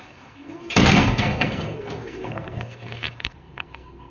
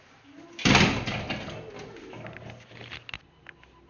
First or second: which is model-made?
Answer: first